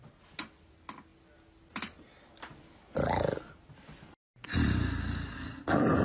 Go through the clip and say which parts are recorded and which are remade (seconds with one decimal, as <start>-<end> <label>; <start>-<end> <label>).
0.0-6.0 recorded